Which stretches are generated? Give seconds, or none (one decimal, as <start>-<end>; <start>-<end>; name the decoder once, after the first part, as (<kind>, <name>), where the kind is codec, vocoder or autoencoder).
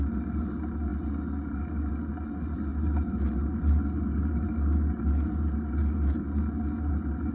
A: none